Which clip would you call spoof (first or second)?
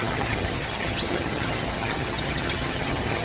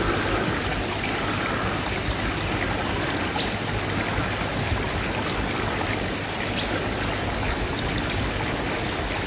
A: first